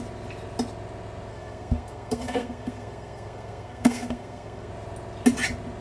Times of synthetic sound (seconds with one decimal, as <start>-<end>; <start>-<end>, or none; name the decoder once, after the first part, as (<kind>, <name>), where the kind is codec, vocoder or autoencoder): 1.3-4.7 (codec, SNAC)